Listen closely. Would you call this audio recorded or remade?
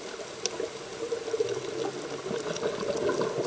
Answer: recorded